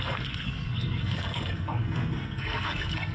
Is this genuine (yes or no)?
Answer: no